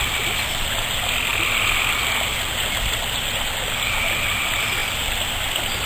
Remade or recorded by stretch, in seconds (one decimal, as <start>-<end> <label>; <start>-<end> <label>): 0.0-5.9 recorded